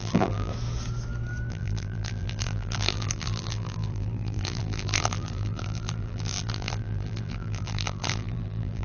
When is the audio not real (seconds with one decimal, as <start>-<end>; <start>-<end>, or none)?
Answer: 0.0-0.5; 1.5-8.8